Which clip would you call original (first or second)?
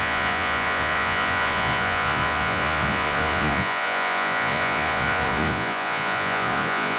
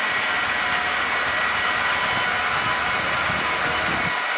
second